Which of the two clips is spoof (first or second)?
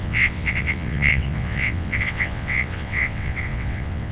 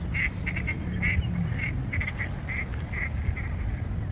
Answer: first